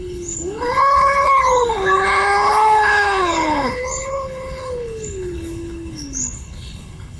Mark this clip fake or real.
fake